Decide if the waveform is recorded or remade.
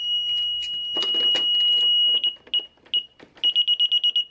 recorded